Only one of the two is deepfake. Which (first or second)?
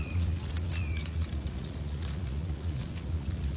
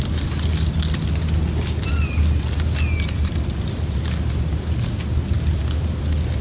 first